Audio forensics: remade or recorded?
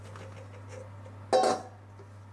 recorded